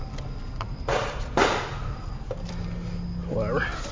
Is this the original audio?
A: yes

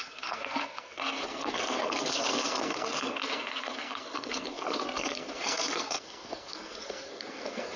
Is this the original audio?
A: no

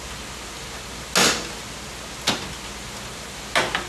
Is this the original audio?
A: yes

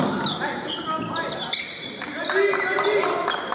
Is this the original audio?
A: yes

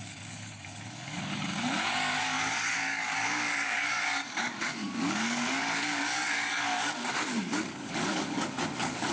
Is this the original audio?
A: no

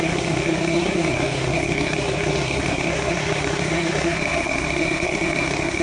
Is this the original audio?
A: no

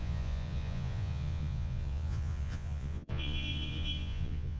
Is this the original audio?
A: no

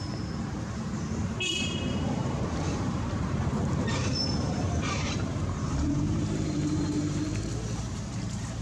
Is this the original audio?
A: no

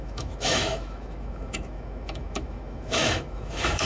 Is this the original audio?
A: no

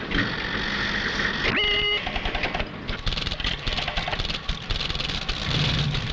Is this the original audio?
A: yes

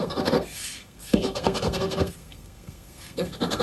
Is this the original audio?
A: no